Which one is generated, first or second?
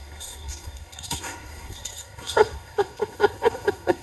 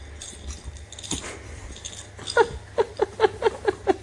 first